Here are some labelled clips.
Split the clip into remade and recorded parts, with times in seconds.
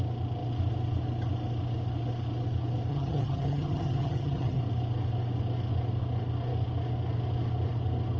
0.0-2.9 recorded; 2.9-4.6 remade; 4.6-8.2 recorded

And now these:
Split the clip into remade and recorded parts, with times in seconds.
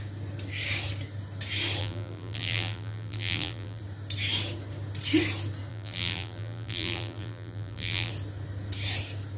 0.0-1.8 recorded; 1.8-3.8 remade; 3.8-5.7 recorded; 5.7-8.1 remade; 8.1-9.4 recorded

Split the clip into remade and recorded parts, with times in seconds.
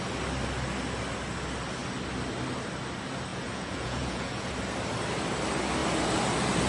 0.0-3.3 recorded; 3.3-4.5 remade; 4.5-6.7 recorded